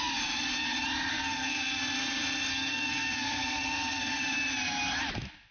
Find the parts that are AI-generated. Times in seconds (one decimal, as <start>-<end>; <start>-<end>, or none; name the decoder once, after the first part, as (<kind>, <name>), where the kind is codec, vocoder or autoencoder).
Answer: 1.1-1.8 (codec, SNAC); 2.5-4.1